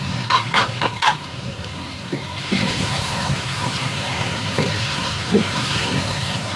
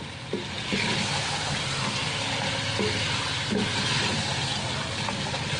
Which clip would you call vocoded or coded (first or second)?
first